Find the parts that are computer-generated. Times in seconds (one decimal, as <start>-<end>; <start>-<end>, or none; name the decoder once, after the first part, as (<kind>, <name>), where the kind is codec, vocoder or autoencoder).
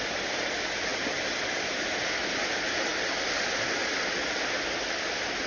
none